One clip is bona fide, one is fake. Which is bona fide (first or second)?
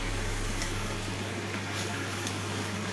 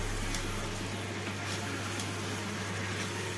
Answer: second